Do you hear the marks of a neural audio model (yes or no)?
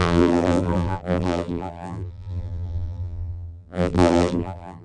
yes